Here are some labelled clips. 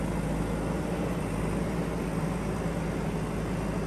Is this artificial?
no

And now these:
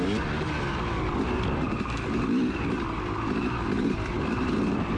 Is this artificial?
no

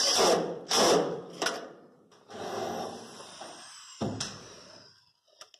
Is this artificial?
no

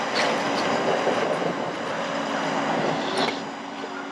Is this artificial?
no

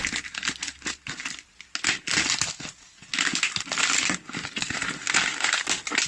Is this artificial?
no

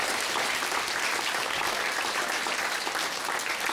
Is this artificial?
no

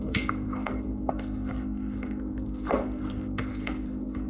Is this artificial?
yes